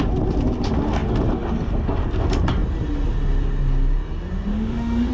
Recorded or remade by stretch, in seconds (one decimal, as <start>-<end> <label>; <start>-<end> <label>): 0.0-4.5 recorded; 4.5-5.1 remade